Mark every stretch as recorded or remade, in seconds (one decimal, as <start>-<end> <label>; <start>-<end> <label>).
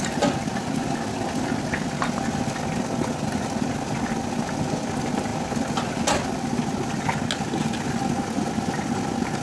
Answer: 0.0-9.4 recorded